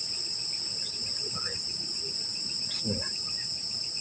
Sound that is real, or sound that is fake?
real